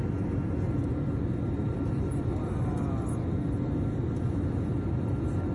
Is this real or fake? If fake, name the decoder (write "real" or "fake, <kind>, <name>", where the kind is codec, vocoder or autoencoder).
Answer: real